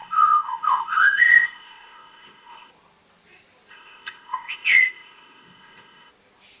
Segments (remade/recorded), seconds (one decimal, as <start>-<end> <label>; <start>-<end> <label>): 0.0-2.7 remade; 2.7-3.7 recorded; 3.7-6.1 remade; 6.1-6.6 recorded